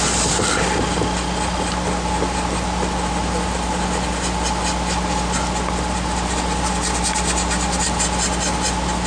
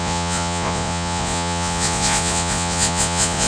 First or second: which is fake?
second